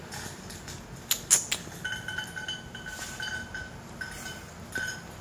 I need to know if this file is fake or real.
real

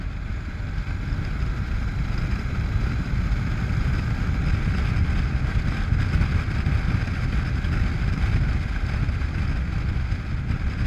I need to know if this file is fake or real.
real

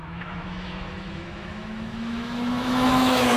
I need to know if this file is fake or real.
fake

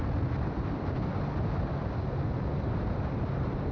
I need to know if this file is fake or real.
real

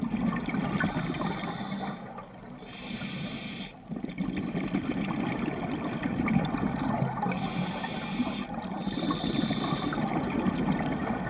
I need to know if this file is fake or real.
real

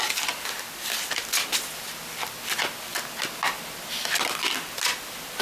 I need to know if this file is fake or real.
real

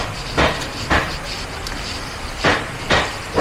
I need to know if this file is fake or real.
real